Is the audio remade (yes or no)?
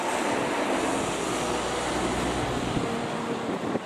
no